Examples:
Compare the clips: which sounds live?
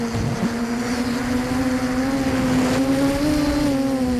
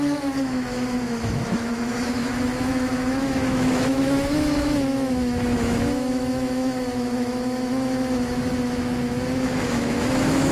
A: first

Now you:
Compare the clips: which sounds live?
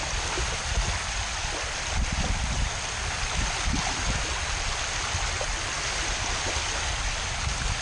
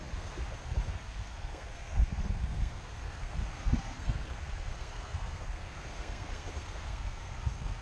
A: first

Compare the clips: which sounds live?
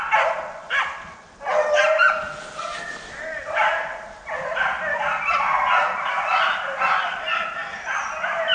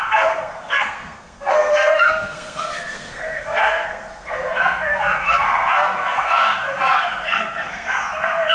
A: first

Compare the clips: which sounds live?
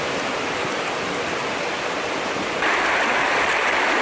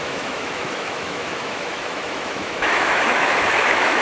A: first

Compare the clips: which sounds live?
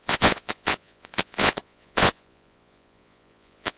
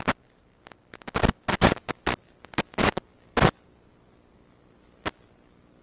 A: second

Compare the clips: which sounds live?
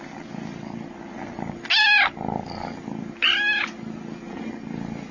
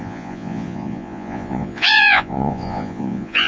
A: first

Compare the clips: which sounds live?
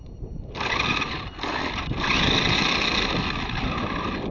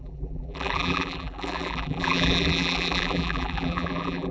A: first